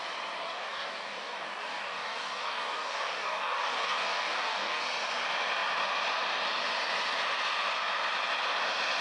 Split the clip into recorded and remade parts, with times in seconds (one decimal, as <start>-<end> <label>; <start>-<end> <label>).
0.0-0.4 recorded; 0.4-4.8 remade; 4.8-9.0 recorded